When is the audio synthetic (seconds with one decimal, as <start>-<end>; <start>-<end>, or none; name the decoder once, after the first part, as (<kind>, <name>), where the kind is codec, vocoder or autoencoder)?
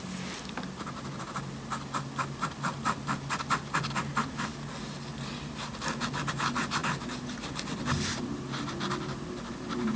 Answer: none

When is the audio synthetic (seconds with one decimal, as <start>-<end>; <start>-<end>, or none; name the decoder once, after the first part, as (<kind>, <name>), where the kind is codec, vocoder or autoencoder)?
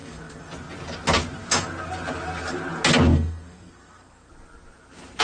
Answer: 0.0-0.5 (codec, SNAC); 3.1-4.3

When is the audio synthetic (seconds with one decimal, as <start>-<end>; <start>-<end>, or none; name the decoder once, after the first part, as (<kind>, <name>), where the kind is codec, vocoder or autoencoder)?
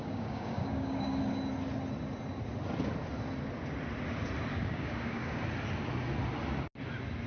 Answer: 0.0-1.2 (codec, DAC); 4.5-5.4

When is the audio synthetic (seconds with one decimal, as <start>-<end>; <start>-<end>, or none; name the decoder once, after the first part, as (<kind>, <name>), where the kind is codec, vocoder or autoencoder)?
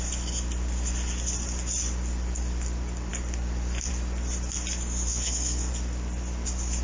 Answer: 5.1-5.7 (codec, SNAC)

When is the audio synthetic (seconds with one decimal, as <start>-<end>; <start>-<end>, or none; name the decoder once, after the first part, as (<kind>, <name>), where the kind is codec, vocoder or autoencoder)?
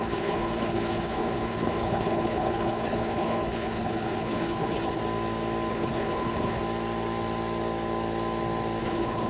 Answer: 0.0-5.0 (codec, HILCodec); 5.7-6.6; 8.8-9.3